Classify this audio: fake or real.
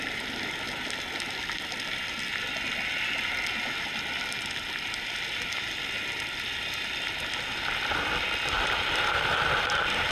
real